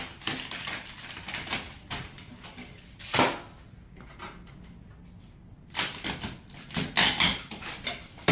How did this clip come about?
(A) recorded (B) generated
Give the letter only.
A